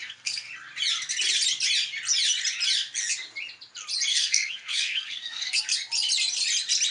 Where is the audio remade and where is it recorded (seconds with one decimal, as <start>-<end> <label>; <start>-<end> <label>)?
0.0-0.5 remade; 0.5-4.1 recorded; 4.1-5.6 remade; 5.6-6.9 recorded